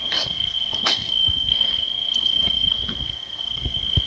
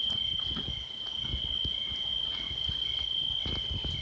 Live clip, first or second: second